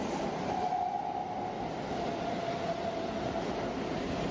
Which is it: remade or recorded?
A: recorded